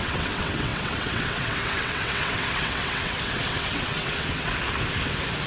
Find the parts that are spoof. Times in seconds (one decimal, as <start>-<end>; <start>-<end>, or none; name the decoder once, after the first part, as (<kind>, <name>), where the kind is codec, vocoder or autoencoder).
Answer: 0.0-4.5 (vocoder, WaveNeXt)